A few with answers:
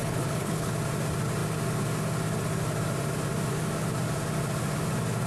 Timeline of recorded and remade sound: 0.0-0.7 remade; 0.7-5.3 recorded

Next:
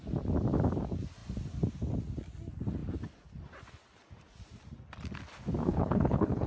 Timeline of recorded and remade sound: 0.0-5.6 recorded; 5.6-6.5 remade

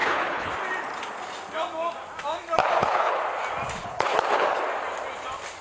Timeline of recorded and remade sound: 0.0-0.5 remade; 0.5-2.6 recorded; 2.6-3.2 remade; 3.2-3.8 recorded; 3.8-4.6 remade; 4.6-5.6 recorded

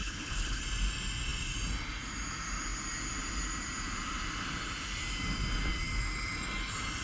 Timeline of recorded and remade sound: 0.0-0.6 remade; 0.6-7.0 recorded

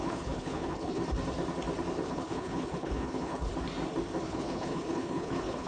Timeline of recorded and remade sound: 0.0-1.0 remade; 1.0-2.1 recorded; 2.1-3.5 remade; 3.5-4.2 recorded; 4.2-5.7 remade